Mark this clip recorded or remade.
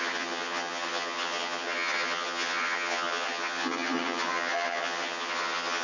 remade